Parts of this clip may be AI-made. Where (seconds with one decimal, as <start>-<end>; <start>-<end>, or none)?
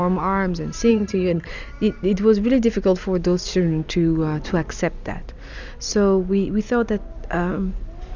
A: 0.9-1.5